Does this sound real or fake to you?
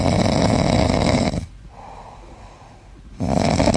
real